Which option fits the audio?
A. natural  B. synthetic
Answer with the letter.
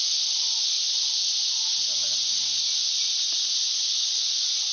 A